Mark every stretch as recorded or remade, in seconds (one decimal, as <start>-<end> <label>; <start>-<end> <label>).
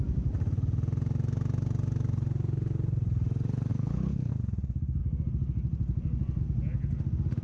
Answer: 0.0-3.7 recorded; 3.7-4.3 remade; 4.3-7.4 recorded